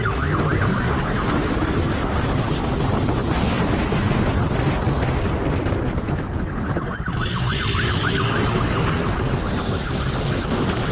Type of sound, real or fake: real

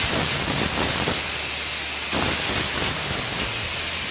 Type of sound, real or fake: real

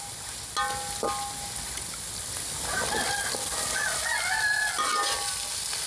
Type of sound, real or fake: real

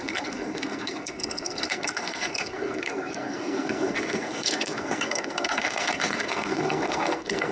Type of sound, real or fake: fake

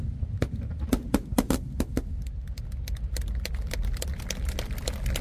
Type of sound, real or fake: real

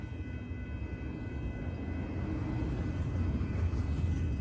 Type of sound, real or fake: real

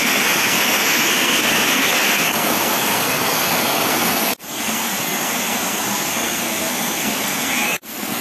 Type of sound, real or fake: fake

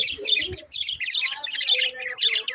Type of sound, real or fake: real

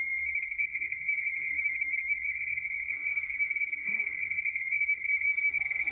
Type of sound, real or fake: fake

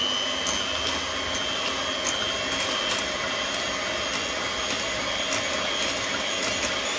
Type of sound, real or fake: real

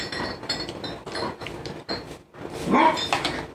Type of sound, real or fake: real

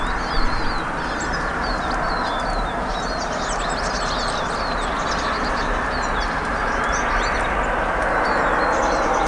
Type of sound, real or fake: real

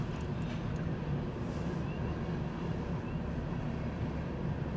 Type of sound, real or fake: real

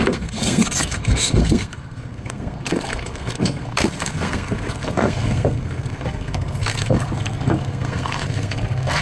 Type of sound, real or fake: fake